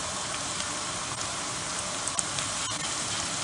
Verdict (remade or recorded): recorded